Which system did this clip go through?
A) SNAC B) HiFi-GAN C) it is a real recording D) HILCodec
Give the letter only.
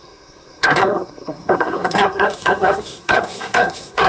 A